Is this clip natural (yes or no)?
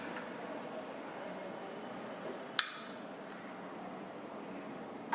yes